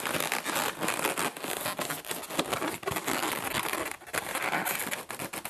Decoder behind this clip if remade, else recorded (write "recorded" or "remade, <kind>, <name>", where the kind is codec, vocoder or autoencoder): recorded